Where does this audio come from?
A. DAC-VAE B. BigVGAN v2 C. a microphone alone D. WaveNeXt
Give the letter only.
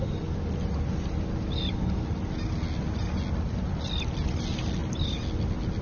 C